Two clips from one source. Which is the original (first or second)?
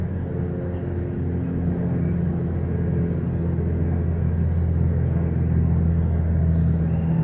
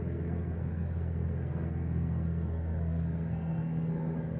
first